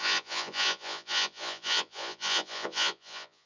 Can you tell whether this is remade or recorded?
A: remade